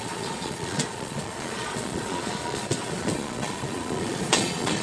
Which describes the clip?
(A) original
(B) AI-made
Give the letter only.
B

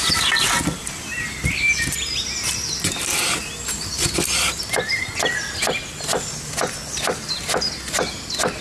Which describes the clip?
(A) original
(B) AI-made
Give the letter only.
A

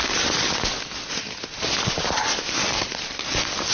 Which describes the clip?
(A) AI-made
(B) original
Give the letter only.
B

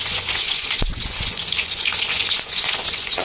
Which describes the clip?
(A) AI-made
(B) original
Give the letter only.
A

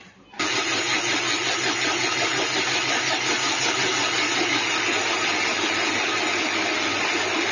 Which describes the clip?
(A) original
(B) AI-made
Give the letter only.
A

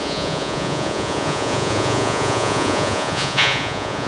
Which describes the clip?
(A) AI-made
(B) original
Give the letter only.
A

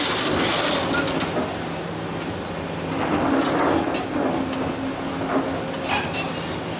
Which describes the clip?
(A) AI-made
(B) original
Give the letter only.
B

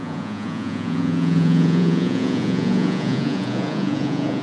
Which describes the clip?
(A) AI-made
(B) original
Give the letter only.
A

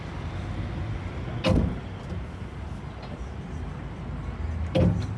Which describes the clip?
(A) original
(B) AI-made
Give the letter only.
A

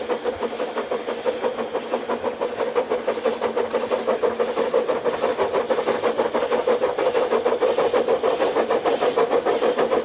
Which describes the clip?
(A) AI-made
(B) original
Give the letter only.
B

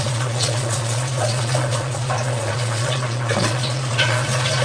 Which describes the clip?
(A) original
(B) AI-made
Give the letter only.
B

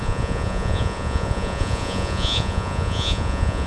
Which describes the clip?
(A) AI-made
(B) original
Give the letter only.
A